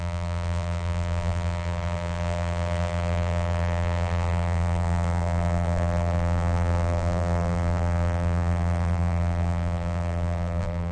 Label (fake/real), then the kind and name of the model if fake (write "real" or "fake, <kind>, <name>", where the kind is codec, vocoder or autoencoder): fake, vocoder, BigVGAN v2